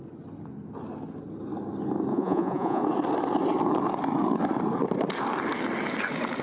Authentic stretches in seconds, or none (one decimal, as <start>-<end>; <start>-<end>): 0.0-2.1; 2.8-6.4